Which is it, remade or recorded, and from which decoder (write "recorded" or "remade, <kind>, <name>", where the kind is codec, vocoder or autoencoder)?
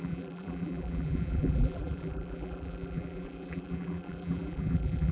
remade, vocoder, BigVGAN v2